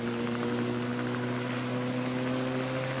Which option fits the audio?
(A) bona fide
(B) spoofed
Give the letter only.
A